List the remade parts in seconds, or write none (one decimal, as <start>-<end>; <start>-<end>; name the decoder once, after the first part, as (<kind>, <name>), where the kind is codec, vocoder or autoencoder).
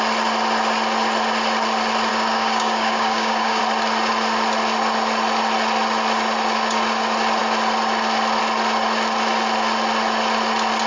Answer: 2.1-3.6 (codec, DAC)